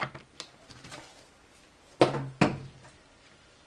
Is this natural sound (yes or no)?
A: yes